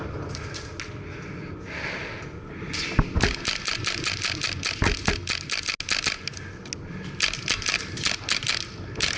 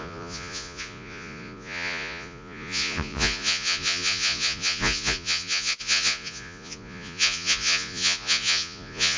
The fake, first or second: second